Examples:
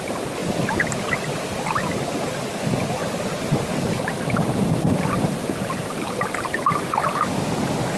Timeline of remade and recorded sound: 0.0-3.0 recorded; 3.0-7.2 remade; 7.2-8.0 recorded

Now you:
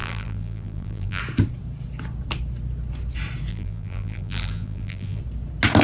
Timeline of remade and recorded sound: 0.0-1.2 remade; 1.2-3.5 recorded; 3.5-5.2 remade; 5.2-5.8 recorded

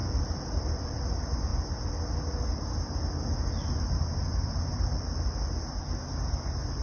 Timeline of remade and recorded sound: 0.0-1.0 remade; 1.0-6.8 recorded